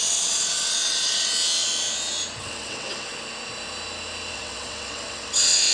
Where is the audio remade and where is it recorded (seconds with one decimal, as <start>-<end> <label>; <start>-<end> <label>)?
0.0-1.3 remade; 1.3-2.4 recorded; 2.4-3.1 remade; 3.1-4.3 recorded; 4.3-5.7 remade